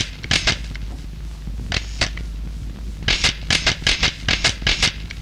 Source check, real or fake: real